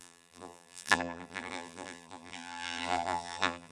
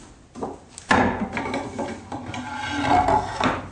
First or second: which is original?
second